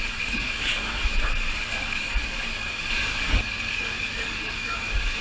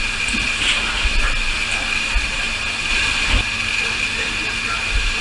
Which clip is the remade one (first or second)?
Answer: first